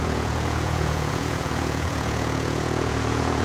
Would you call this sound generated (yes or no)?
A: yes